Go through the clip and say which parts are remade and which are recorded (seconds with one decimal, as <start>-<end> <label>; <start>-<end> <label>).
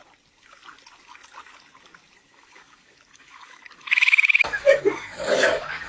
0.0-2.3 recorded; 2.3-5.9 remade